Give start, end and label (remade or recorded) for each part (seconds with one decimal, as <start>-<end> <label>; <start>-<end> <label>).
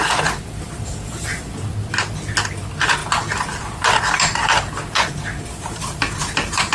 0.0-1.7 remade; 1.7-2.6 recorded; 2.6-3.0 remade; 3.0-4.0 recorded; 4.0-6.7 remade